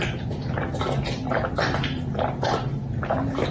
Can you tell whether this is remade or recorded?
recorded